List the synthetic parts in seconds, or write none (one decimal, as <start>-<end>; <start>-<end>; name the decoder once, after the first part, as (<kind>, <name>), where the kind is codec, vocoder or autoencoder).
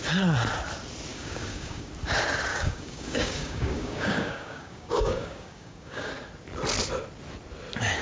1.1-1.9 (codec, DAC); 2.5-6.1